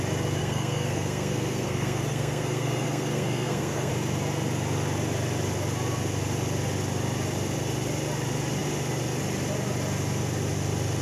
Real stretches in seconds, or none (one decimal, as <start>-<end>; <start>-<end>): 0.0-0.4; 3.9-11.0